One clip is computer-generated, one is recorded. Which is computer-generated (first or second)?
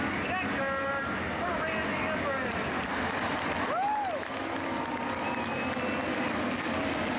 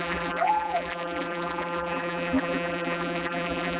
second